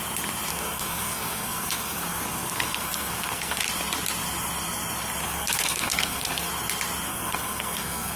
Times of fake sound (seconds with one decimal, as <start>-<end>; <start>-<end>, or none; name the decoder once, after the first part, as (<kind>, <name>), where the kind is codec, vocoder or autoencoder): 0.5-3.6 (codec, SNAC); 5.2-6.5; 7.1-8.2